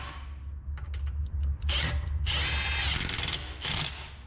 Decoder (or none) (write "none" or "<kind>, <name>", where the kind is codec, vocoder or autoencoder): none